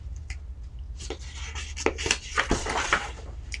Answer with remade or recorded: recorded